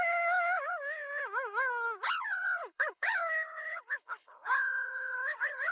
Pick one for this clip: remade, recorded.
remade